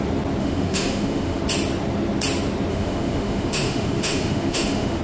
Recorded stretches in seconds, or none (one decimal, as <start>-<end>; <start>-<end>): 0.0-0.4; 1.4-2.7